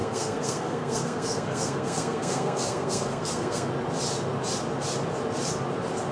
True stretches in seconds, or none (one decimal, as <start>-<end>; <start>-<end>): 3.7-6.1